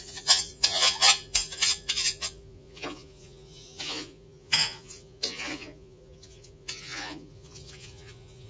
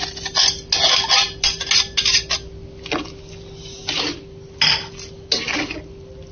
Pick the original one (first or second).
second